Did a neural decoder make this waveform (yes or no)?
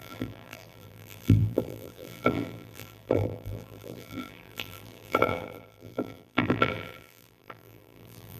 yes